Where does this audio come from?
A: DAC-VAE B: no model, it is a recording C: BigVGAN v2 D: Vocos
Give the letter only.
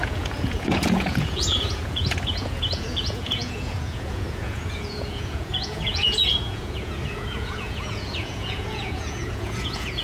D